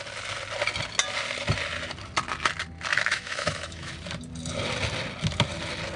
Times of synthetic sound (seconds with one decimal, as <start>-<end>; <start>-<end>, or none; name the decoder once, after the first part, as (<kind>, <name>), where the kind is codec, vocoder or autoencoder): 2.9-3.9 (autoencoder, DAC-VAE)